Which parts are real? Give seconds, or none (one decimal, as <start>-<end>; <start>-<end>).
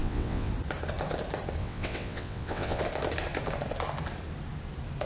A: 0.5-1.6; 2.8-5.1